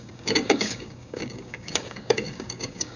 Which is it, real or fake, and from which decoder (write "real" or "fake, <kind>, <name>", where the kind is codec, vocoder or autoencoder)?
fake, codec, DAC